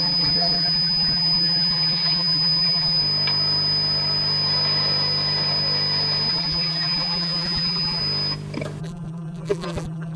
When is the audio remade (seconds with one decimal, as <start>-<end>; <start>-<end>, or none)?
0.0-3.0; 6.3-8.0; 8.8-10.2